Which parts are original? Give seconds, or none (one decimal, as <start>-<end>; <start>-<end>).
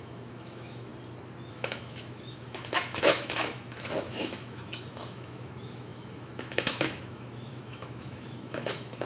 0.9-1.5